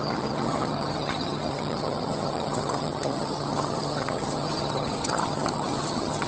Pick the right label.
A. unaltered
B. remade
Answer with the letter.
B